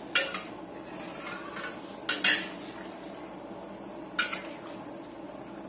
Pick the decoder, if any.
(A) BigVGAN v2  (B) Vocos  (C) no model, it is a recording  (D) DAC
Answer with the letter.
C